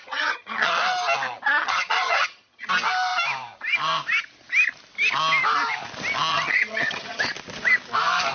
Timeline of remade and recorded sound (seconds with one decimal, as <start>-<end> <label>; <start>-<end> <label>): 0.0-0.7 remade; 0.7-1.6 recorded; 1.6-2.7 remade; 2.7-6.3 recorded; 6.3-7.2 remade; 7.2-8.3 recorded